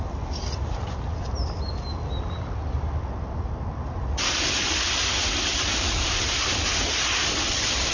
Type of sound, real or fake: real